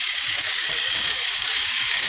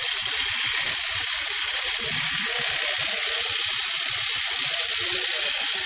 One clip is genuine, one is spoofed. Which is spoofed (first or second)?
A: first